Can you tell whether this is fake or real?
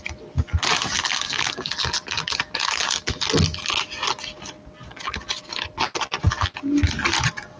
real